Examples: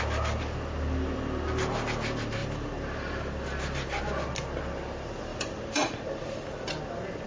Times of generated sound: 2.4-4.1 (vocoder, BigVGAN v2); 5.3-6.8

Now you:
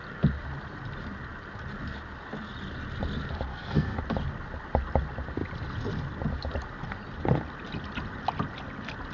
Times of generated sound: 3.5-4.0 (codec, SNAC)

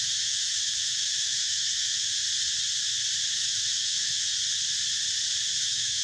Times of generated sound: 0.0-2.2 (autoencoder, DAC-VAE); 3.3-4.3; 5.6-6.0

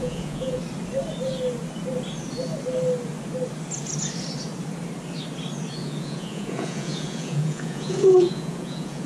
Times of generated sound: 0.0-0.6 (vocoder, Vocos); 5.7-9.1

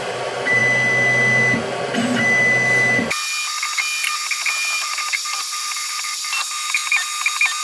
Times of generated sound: 0.0-0.6 (vocoder, BigVGAN v2); 4.5-6.8